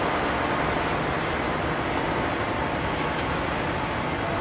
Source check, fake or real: real